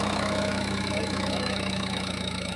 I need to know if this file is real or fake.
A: fake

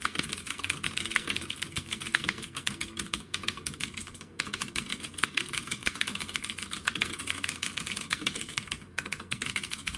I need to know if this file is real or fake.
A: fake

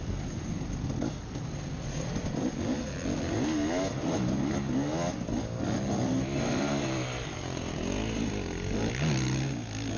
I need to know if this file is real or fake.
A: real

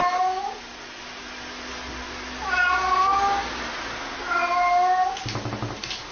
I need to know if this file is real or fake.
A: real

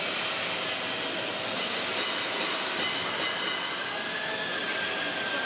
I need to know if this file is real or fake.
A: real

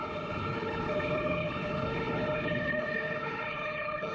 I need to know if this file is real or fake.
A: fake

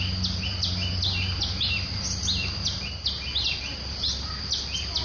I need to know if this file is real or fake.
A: real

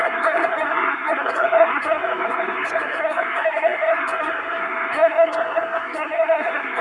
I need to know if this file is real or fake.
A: fake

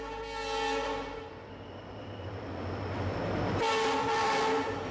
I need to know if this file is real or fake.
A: real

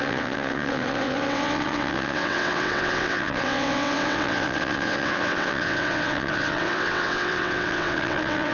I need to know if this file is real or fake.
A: fake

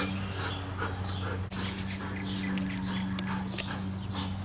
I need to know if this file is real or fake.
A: real